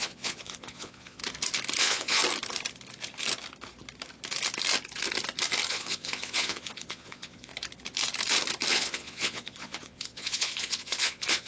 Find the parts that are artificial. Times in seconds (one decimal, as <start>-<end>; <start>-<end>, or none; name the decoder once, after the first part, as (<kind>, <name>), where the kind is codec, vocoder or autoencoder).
0.0-1.2 (vocoder, Vocos); 1.8-2.2; 5.7-7.5; 8.7-11.5